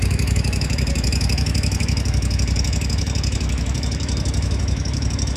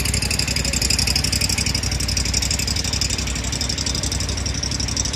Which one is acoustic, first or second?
second